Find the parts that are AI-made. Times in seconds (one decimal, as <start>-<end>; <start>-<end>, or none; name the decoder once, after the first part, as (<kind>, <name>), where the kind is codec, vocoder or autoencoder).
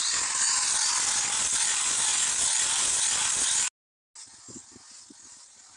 none